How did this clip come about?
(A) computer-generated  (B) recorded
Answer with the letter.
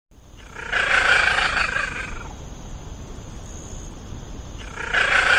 B